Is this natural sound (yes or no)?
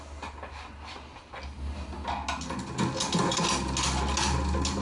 yes